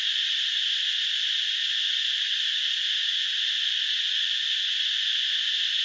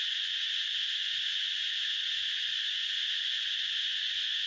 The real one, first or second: first